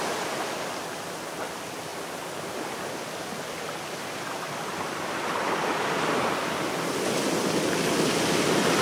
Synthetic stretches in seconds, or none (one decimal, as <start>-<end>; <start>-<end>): none